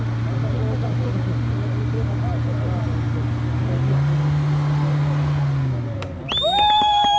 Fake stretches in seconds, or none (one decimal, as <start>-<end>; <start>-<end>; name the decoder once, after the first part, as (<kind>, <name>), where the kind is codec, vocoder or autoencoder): none